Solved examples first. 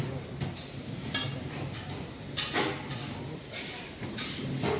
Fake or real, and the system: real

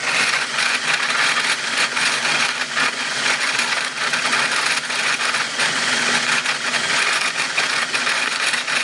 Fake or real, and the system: fake, vocoder, Vocos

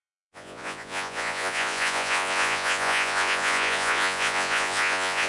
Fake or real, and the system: fake, vocoder, Vocos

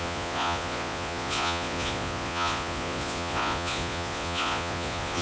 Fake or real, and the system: fake, vocoder, Vocos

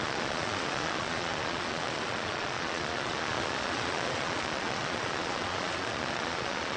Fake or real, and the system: fake, vocoder, Vocos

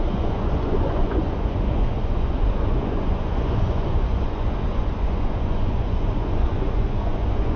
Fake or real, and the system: fake, vocoder, Vocos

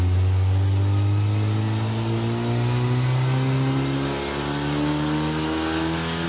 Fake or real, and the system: real